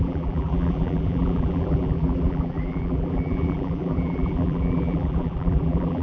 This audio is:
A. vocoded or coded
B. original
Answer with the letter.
A